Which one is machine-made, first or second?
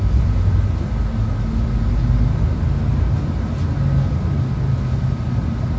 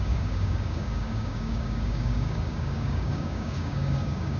second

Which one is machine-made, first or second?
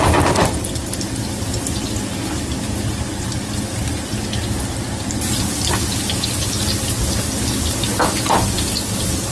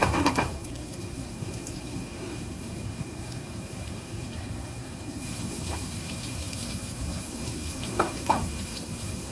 second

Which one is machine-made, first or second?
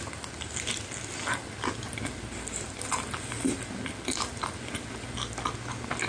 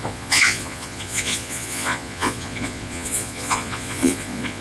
second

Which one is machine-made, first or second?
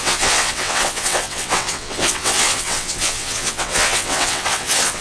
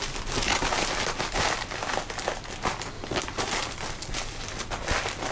first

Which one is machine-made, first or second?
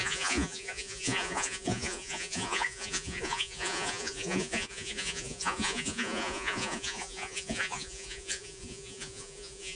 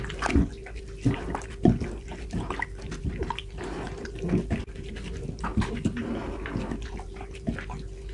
first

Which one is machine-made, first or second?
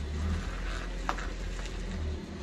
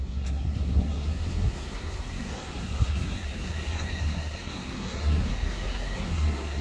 second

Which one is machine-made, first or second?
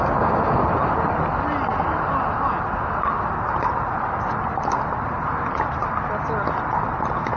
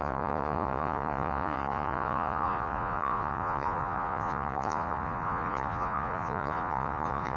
second